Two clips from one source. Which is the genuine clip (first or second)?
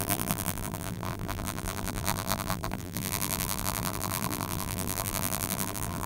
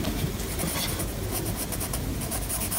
second